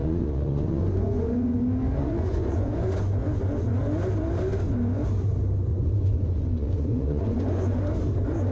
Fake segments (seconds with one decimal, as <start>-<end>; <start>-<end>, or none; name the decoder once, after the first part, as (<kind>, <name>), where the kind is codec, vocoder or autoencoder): 0.0-1.6 (vocoder, Vocos); 2.0-2.7; 5.7-7.8